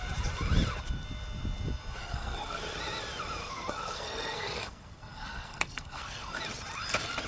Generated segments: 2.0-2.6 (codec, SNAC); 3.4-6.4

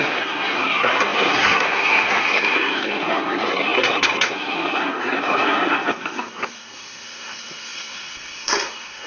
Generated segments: 0.0-9.1 (codec, SNAC)

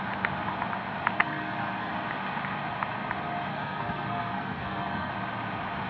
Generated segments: 1.2-1.9 (codec, SNAC); 3.5-5.1